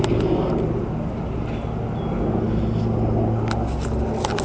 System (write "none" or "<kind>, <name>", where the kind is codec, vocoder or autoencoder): none